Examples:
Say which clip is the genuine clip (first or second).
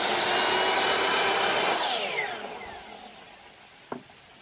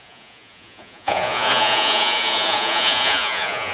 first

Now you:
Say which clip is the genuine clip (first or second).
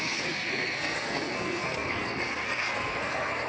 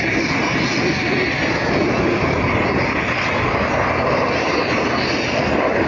second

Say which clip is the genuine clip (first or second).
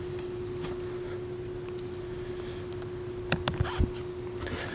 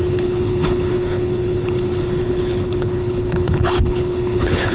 first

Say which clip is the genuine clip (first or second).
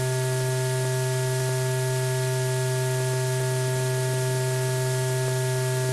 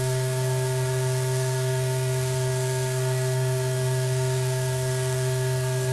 first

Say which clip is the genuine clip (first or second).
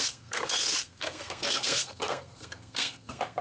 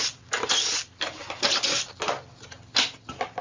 second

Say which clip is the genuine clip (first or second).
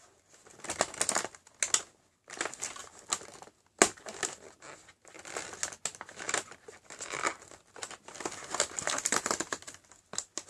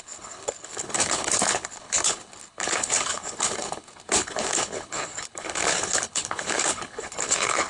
first